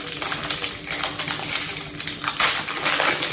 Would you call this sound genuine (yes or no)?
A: yes